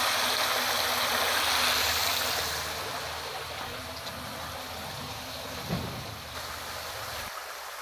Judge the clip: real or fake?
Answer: real